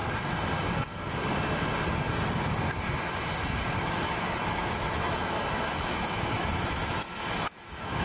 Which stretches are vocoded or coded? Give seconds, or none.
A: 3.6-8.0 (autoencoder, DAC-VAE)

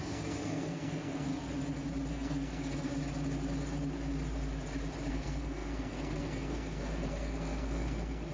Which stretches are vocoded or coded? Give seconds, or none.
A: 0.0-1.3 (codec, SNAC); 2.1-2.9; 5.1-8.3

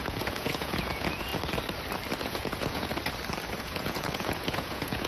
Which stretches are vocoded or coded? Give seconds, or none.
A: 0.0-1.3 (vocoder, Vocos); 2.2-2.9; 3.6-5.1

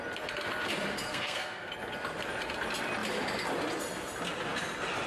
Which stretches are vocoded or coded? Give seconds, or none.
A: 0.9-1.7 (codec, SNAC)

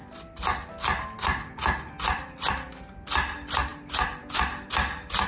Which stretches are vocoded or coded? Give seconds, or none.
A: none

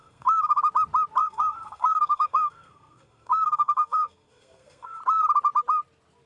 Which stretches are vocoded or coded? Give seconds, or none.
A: 0.0-0.6 (codec, SNAC); 1.2-5.0

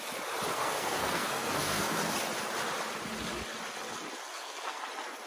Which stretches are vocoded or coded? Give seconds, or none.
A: 0.5-2.1 (codec, SNAC); 4.3-4.8

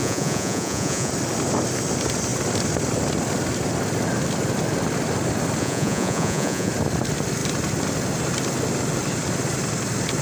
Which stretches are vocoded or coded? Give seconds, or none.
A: 0.0-1.1 (vocoder, Vocos); 5.6-6.7